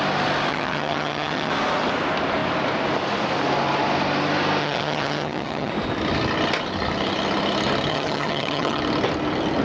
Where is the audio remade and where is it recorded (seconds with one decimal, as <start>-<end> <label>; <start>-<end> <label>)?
0.0-0.5 recorded; 0.5-1.5 remade; 1.5-4.6 recorded; 4.6-5.7 remade; 5.7-7.9 recorded; 7.9-8.8 remade; 8.8-9.6 recorded